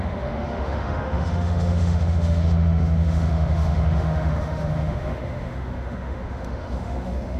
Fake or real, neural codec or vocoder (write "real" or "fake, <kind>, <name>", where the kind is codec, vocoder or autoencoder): fake, autoencoder, DAC-VAE